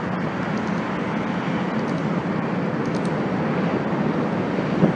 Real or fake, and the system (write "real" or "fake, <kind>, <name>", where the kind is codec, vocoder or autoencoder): real